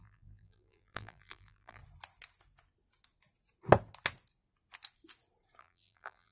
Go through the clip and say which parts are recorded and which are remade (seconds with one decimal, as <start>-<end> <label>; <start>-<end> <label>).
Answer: 0.0-1.8 remade; 1.8-5.6 recorded; 5.6-6.3 remade